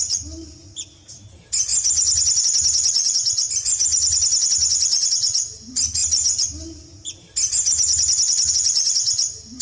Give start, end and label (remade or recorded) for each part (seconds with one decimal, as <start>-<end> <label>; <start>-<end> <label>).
0.0-9.6 recorded